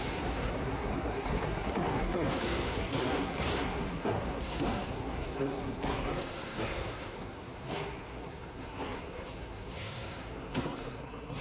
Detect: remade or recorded remade